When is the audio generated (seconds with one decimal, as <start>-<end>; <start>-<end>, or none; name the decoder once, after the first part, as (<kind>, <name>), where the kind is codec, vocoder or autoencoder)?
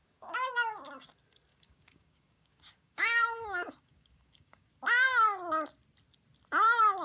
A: 0.0-0.5 (codec, DAC); 1.5-4.7